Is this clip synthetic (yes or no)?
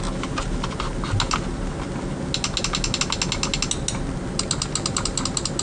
no